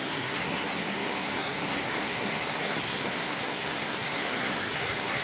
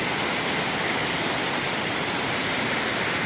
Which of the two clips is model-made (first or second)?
first